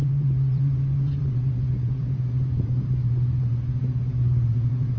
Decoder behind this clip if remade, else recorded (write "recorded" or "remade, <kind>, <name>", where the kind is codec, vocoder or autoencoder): remade, vocoder, Vocos